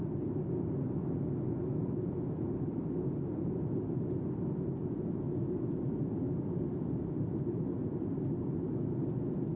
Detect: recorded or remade recorded